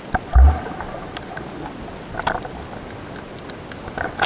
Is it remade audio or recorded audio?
recorded